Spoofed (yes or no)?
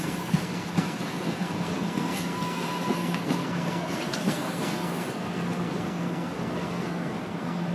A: yes